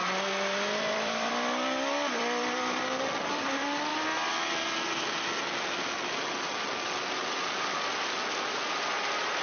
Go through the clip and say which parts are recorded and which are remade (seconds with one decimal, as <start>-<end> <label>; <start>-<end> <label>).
0.0-3.9 remade; 3.9-8.5 recorded; 8.5-9.4 remade